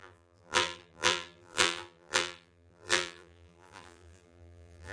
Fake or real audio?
fake